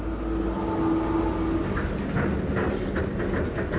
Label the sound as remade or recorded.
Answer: recorded